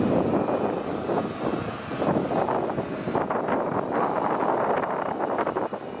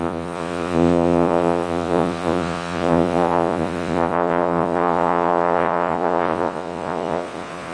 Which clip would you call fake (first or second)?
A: second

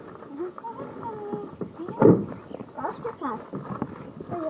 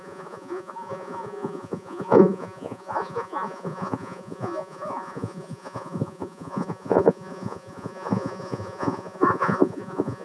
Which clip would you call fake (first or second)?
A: second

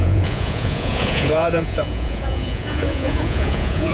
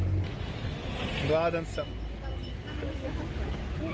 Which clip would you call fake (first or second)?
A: first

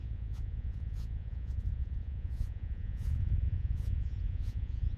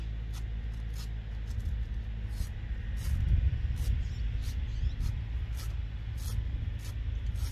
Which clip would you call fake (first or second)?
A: first